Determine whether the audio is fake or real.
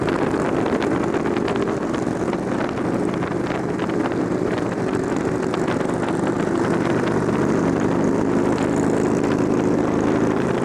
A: real